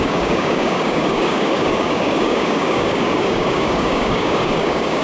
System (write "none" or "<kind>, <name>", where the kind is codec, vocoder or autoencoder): codec, DAC